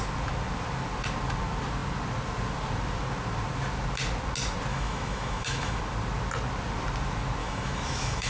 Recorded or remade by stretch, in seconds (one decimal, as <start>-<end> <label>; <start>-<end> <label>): 0.0-4.7 recorded; 4.7-5.8 remade; 5.8-7.4 recorded; 7.4-8.3 remade